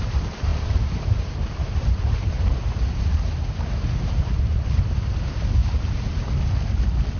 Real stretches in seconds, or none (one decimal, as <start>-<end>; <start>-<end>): 0.0-0.5; 4.8-5.6; 6.3-7.2